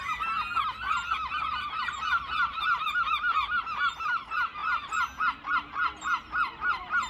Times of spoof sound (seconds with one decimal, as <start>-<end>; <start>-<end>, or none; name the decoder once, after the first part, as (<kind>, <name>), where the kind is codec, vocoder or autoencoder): none